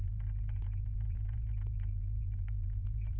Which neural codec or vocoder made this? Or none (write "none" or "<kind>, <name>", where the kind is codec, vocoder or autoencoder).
vocoder, Vocos